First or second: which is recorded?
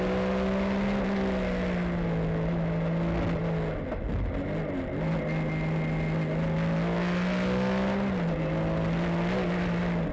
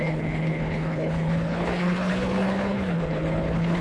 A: first